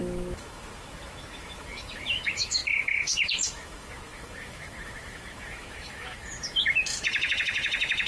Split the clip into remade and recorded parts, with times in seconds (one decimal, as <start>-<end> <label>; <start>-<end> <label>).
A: 0.0-8.1 remade